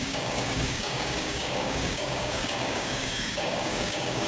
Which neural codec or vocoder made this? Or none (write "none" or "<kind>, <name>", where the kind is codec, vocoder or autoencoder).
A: codec, DAC